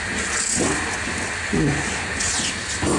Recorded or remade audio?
recorded